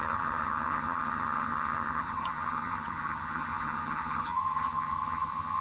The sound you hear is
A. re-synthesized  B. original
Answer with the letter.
A